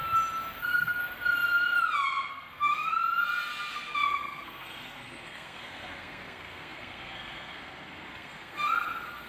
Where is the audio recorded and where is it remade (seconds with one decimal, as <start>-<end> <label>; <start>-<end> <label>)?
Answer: 0.0-0.6 recorded; 0.6-1.0 remade; 1.0-2.3 recorded; 2.3-3.0 remade; 3.0-3.7 recorded; 3.7-9.3 remade